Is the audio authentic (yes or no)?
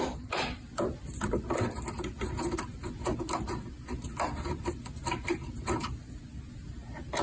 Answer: yes